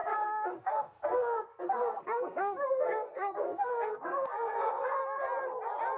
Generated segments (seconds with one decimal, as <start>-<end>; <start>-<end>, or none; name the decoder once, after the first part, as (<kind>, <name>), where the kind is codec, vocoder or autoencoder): 0.0-5.0 (codec, SNAC)

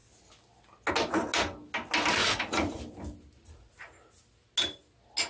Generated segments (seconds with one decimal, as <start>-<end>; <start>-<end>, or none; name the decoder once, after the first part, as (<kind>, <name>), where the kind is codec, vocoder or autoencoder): 2.2-2.8 (vocoder, Vocos)

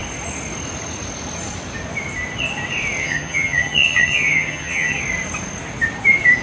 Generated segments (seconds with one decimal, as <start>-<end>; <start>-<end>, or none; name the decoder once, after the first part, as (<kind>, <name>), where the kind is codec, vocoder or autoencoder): 3.0-5.0 (vocoder, HiFi-GAN)

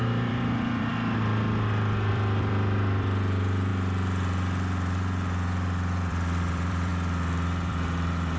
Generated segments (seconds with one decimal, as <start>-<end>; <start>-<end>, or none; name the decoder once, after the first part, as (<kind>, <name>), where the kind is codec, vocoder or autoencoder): 0.0-0.9 (vocoder, BigVGAN v2); 2.1-3.7; 6.1-6.9; 7.7-8.4